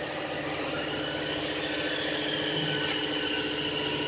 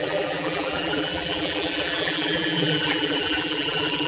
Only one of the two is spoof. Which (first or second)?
second